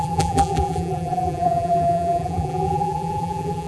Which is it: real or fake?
fake